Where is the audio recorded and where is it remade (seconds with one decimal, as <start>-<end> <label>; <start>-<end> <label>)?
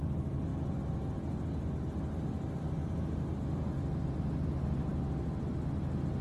0.0-6.2 recorded